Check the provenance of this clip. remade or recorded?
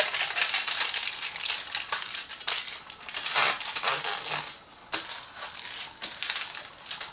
recorded